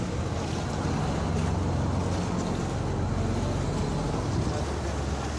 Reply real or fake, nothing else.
real